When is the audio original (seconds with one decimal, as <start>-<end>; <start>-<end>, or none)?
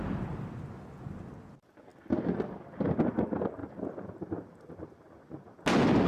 0.0-6.1